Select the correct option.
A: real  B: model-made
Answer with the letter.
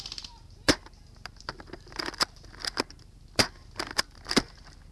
A